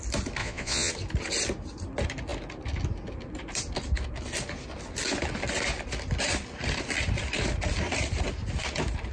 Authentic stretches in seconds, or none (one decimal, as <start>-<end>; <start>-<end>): 0.0-0.4; 0.9-9.1